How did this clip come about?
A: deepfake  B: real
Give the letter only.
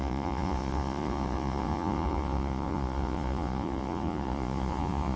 A